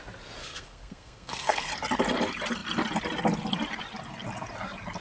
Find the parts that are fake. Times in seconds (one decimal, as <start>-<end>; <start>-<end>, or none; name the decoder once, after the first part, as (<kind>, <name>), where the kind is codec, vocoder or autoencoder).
0.4-1.7 (codec, SNAC)